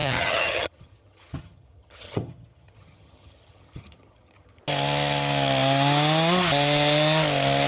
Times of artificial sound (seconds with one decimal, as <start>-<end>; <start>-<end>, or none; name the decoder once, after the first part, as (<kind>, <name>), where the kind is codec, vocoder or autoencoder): 0.0-4.6 (vocoder, HiFi-GAN)

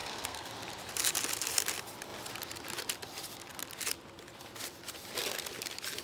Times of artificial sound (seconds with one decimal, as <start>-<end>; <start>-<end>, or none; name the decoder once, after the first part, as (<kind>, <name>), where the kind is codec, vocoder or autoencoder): 0.0-0.5 (codec, SNAC)

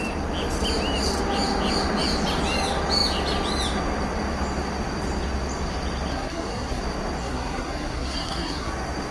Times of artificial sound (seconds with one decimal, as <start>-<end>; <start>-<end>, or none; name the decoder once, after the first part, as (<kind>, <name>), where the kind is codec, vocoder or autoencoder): 6.1-6.8 (codec, SNAC); 7.2-8.7